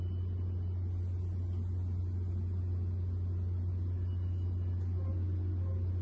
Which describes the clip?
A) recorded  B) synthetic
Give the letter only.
A